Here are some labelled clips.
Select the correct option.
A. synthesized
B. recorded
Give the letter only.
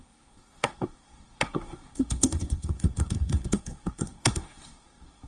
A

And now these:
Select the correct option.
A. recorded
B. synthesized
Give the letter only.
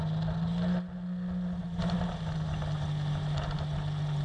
A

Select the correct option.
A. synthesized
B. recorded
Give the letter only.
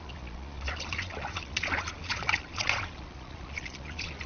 A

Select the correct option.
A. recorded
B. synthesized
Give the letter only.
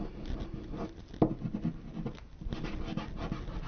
A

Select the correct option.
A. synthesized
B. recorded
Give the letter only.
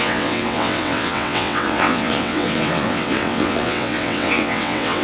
A